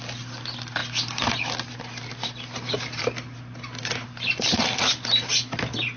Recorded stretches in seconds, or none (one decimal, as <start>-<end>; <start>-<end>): 0.8-3.0